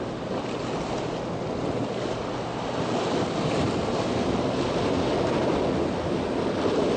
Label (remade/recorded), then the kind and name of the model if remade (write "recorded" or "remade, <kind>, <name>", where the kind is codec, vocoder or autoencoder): recorded